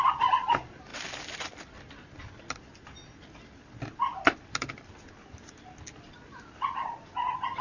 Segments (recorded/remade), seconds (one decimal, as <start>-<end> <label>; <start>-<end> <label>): 0.0-7.6 recorded